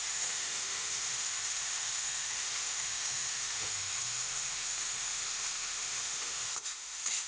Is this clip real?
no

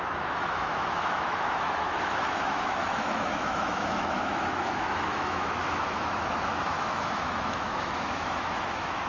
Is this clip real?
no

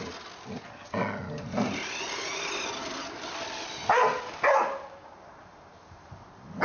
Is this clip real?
yes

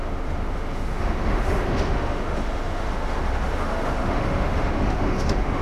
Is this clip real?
no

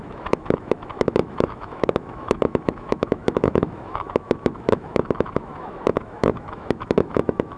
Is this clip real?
no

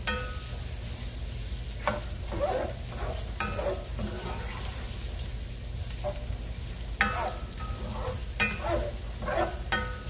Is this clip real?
yes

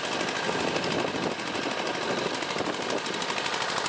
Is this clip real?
yes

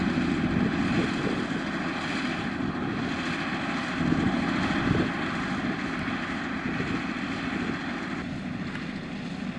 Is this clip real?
yes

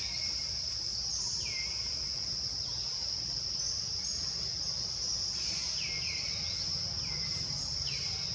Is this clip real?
yes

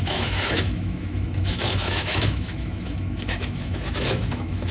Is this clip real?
no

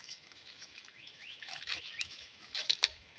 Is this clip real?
no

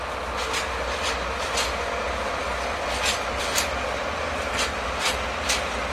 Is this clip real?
yes